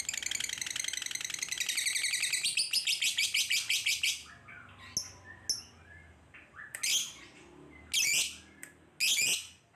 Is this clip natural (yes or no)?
yes